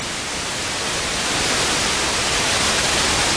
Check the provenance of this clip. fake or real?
real